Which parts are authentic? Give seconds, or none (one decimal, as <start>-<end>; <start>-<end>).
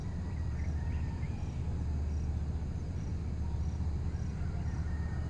0.0-5.3